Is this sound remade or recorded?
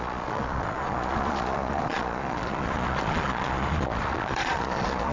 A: remade